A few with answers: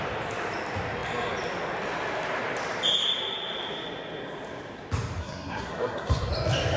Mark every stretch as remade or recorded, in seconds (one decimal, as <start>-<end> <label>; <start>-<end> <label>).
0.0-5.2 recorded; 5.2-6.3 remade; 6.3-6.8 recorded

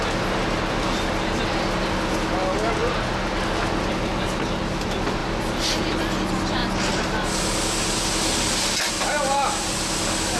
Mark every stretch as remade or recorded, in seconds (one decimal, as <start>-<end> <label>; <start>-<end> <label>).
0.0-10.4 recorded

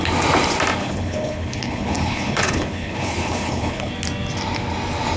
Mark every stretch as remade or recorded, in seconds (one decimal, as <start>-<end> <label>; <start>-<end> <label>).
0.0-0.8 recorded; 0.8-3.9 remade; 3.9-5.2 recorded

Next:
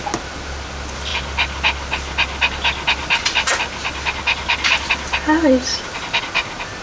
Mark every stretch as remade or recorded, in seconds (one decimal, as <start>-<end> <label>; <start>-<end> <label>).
0.0-6.8 recorded

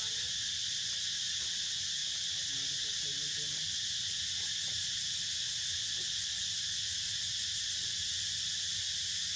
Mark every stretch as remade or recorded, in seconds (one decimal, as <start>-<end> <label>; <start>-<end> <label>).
0.0-9.4 recorded

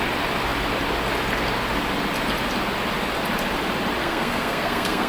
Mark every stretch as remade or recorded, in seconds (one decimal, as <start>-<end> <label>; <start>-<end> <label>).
0.0-4.0 recorded; 4.0-5.1 remade

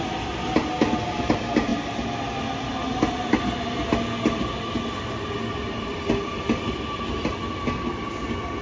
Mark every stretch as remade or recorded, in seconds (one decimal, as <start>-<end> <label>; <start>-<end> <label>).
0.0-8.6 recorded